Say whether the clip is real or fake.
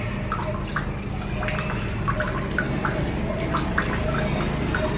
real